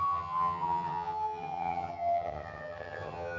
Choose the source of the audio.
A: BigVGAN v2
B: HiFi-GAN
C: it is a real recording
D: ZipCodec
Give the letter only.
B